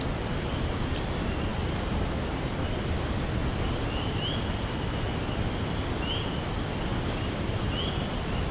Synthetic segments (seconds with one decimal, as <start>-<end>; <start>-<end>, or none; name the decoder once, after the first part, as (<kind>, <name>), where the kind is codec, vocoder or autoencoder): none